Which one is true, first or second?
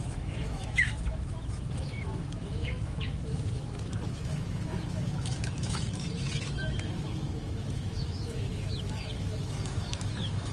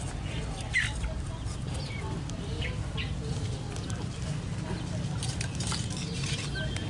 second